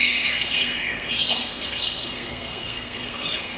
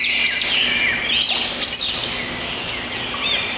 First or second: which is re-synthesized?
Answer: first